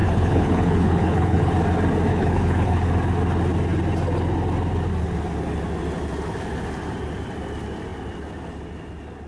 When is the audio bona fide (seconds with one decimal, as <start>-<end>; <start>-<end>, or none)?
1.5-2.1; 2.9-9.3